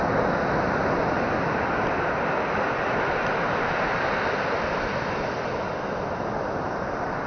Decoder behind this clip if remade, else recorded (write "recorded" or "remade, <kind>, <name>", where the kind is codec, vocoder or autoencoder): recorded